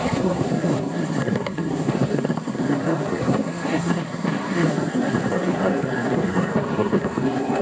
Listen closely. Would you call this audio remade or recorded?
remade